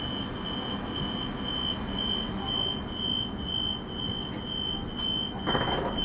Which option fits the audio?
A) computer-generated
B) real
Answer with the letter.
B